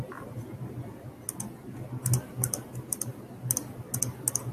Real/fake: real